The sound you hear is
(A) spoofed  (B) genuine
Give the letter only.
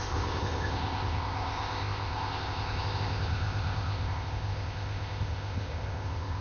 A